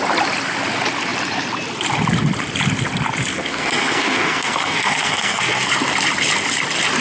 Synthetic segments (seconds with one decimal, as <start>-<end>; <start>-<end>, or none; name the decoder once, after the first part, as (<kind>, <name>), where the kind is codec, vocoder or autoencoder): 3.3-5.7 (codec, SNAC)